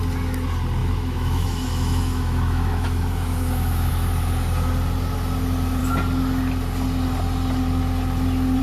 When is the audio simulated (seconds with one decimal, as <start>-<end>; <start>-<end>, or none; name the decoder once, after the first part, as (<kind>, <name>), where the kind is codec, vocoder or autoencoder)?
0.8-3.9 (autoencoder, DAC-VAE)